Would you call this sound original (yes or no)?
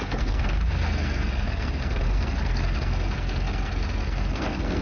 no